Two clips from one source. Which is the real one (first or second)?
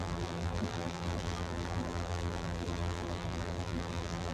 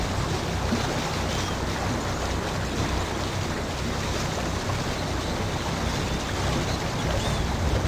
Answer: second